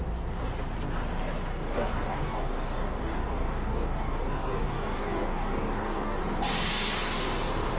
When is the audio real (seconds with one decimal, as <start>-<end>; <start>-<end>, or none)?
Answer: 0.0-1.5; 6.2-7.8